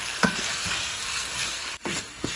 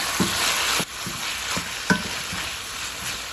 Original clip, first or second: second